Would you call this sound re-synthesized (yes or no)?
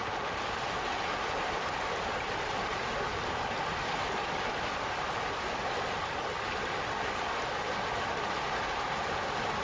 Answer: no